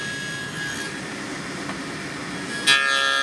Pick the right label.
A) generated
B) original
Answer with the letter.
B